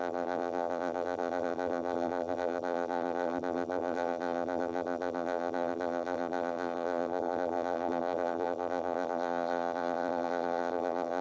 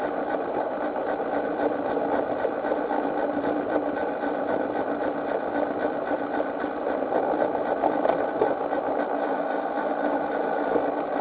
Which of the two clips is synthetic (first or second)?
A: first